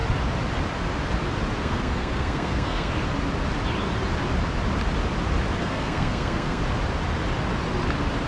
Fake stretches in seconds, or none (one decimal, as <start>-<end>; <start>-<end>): 1.6-2.9; 5.6-6.6